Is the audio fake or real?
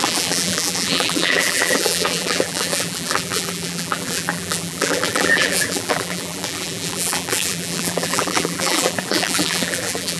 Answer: fake